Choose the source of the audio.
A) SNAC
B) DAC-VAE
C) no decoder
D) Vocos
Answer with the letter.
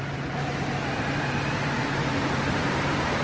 C